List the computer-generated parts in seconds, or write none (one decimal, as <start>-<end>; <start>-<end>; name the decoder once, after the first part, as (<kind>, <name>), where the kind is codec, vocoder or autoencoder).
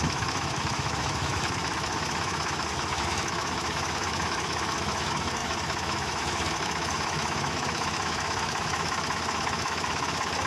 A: 0.0-10.5 (autoencoder, DAC-VAE)